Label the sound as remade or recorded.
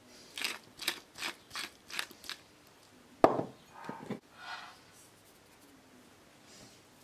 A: recorded